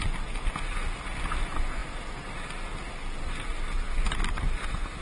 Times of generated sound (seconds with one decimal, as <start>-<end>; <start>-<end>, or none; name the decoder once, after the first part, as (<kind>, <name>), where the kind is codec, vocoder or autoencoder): none